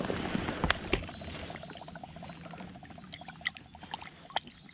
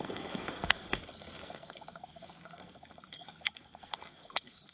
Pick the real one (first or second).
first